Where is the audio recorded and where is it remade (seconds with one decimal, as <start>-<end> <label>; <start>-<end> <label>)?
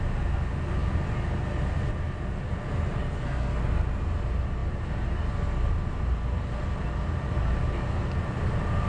0.0-3.0 recorded; 3.0-3.6 remade; 3.6-8.9 recorded